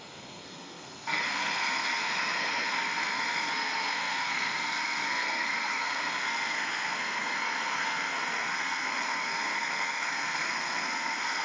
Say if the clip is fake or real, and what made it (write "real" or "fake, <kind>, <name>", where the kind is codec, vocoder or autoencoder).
fake, codec, SNAC